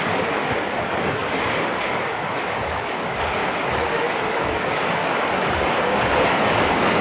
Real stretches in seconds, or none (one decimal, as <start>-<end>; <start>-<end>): none